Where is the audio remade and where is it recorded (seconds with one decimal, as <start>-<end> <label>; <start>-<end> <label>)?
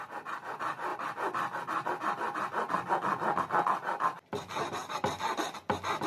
0.0-6.1 recorded